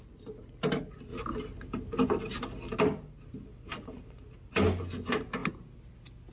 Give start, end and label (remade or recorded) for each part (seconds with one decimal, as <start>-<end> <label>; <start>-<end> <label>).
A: 0.0-6.3 recorded